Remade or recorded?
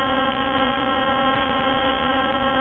remade